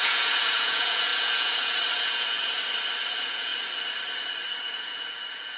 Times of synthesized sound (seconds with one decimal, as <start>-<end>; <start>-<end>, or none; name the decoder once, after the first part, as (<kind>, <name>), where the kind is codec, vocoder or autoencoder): 0.0-2.4 (vocoder, Vocos); 3.0-3.5; 4.7-5.6